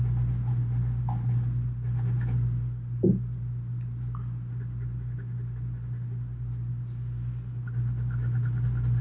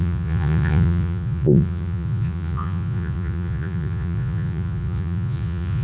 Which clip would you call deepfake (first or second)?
second